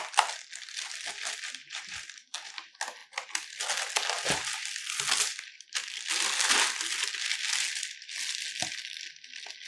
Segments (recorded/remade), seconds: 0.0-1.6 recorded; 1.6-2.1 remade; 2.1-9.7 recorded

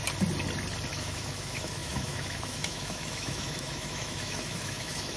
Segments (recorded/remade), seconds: 0.0-0.9 recorded; 0.9-5.2 remade

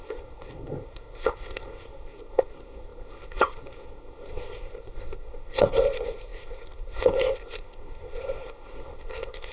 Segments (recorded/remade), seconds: 0.0-9.5 remade